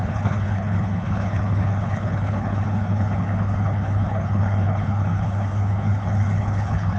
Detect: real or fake fake